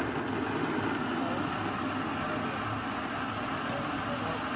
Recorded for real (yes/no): yes